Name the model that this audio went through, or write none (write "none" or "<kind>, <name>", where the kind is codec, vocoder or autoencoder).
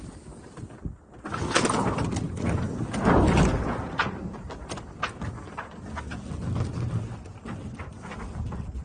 none